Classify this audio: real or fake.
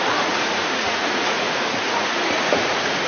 fake